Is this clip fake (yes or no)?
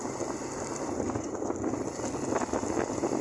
no